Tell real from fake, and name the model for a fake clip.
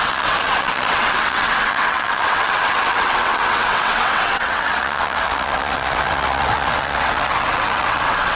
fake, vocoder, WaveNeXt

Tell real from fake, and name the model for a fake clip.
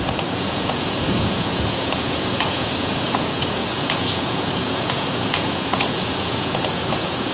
fake, vocoder, Vocos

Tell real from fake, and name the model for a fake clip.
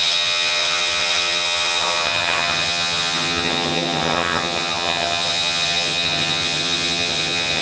fake, vocoder, HiFi-GAN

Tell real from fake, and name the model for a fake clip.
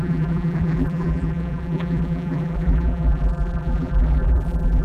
fake, vocoder, BigVGAN v2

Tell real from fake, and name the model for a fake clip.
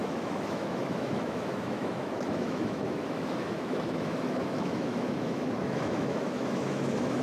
fake, autoencoder, DAC-VAE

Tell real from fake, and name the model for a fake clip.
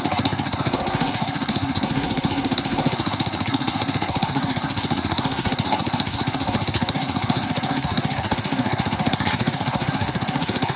fake, codec, SNAC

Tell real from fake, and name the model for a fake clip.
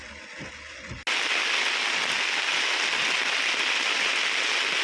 real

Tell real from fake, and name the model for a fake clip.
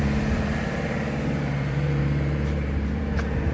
fake, vocoder, BigVGAN v2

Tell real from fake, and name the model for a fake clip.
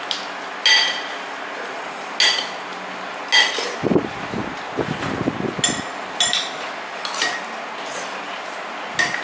real